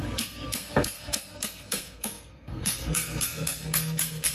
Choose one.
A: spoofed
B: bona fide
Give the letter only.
A